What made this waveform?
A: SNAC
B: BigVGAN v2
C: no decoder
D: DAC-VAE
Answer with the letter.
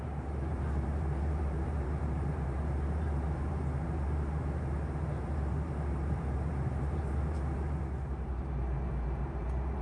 B